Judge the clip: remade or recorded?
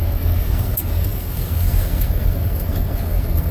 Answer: remade